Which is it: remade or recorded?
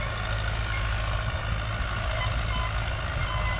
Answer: recorded